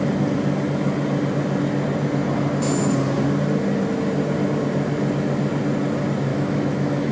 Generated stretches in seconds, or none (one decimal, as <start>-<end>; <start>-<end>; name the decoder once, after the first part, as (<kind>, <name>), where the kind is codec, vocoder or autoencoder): 6.3-7.1 (autoencoder, DAC-VAE)

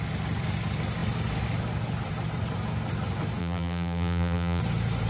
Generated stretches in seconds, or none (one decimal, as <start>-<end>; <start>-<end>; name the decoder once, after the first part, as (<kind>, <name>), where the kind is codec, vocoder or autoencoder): 3.4-4.6 (vocoder, BigVGAN v2)

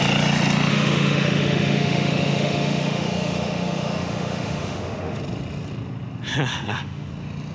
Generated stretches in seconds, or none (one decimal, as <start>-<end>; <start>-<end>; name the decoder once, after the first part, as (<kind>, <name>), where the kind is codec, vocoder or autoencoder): 0.7-5.2 (autoencoder, DAC-VAE); 6.5-7.1

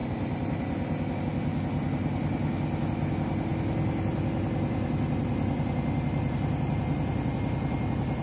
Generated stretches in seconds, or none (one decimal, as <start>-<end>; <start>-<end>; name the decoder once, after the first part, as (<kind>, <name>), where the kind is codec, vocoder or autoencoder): none

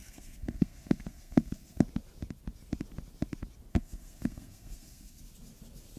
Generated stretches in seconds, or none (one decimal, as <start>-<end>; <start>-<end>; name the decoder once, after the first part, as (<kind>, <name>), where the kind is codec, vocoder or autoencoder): 0.0-1.8 (codec, SNAC); 3.7-5.2

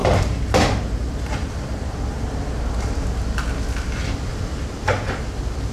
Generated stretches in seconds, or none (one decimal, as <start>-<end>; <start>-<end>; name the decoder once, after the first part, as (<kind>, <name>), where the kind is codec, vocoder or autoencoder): 0.0-1.5 (vocoder, BigVGAN v2); 4.3-5.7

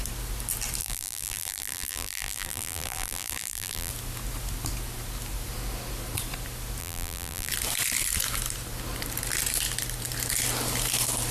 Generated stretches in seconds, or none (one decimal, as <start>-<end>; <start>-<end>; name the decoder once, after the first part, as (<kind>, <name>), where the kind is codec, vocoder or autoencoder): 0.8-3.9 (vocoder, BigVGAN v2); 6.8-7.5

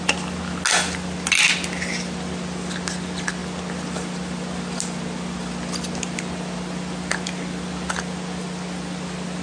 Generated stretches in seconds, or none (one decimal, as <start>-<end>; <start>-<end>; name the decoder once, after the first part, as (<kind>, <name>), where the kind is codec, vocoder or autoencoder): none